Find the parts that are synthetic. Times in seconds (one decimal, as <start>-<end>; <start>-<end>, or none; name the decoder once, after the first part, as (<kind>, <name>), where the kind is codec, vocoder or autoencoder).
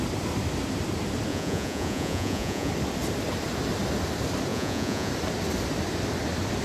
1.3-2.7 (vocoder, Vocos); 4.5-5.1